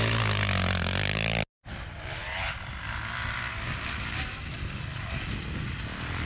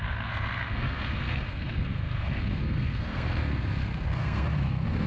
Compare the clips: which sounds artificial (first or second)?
second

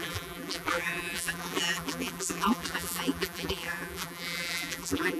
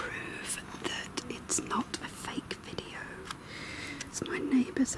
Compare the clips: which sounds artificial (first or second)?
first